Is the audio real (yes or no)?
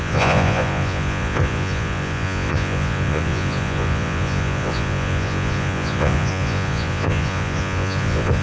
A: no